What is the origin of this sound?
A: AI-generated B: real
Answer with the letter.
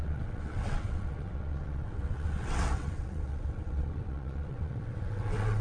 A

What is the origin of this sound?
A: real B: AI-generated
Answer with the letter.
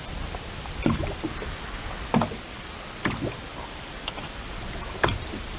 A